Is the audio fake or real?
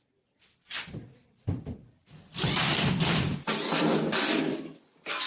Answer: fake